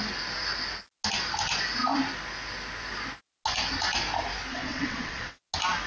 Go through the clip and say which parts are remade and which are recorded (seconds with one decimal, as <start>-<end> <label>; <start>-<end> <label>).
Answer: 0.0-4.5 recorded; 4.5-5.4 remade; 5.4-5.9 recorded